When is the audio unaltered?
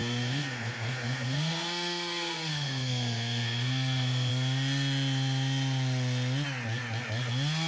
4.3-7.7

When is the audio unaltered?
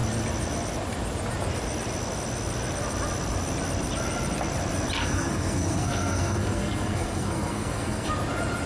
0.0-5.0; 8.1-8.7